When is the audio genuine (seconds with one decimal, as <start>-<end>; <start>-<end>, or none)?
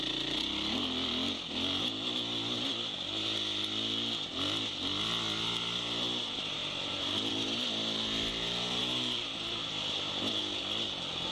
0.0-8.8; 10.4-11.3